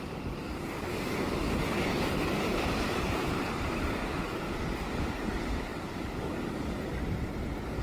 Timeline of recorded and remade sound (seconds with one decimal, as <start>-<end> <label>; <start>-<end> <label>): 0.0-7.0 remade; 7.0-7.8 recorded